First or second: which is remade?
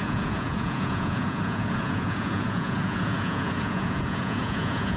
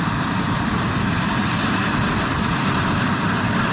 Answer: first